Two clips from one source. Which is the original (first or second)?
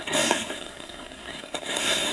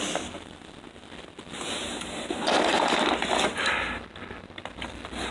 second